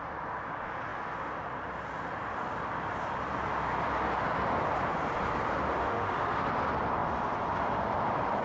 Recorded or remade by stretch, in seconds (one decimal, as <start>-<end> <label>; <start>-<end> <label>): 0.0-5.8 recorded; 5.8-6.5 remade; 6.5-8.4 recorded

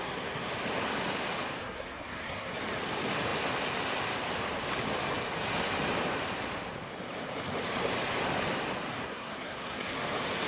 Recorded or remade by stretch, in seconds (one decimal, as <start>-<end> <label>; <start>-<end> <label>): 0.0-0.5 remade; 0.5-1.6 recorded; 1.6-2.5 remade; 2.5-8.9 recorded; 8.9-9.9 remade; 9.9-10.5 recorded

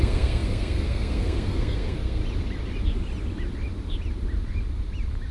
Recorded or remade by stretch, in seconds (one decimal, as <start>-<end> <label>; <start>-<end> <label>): 0.0-2.2 remade; 2.2-5.3 recorded

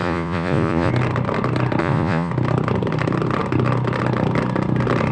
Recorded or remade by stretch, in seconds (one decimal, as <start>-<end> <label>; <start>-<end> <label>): 0.0-0.9 remade; 0.9-1.8 recorded; 1.8-2.3 remade; 2.3-5.1 recorded

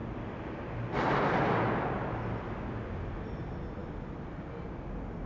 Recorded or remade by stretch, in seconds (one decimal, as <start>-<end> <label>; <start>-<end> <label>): 0.0-5.3 recorded

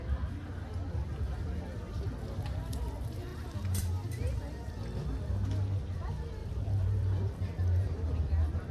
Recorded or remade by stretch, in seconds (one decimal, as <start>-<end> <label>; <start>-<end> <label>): 0.0-3.3 recorded; 3.3-4.7 remade; 4.7-6.4 recorded; 6.4-8.7 remade

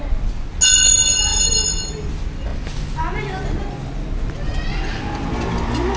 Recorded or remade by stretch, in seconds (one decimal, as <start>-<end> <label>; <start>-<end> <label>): 0.0-6.0 recorded